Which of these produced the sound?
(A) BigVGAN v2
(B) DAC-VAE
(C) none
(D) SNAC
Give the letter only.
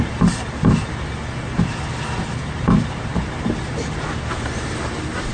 C